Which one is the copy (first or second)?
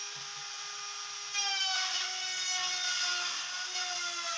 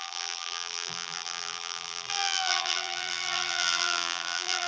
second